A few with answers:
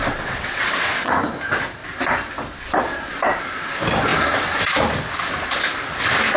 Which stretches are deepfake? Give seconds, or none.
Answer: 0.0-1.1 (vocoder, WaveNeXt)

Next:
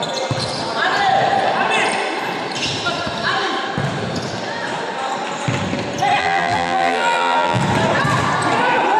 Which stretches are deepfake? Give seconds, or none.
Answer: 6.2-7.6 (vocoder, BigVGAN v2)

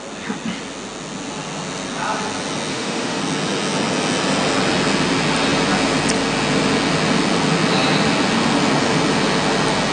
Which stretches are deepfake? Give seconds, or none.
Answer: 2.7-3.2 (autoencoder, DAC-VAE)